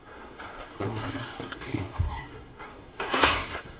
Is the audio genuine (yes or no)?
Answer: no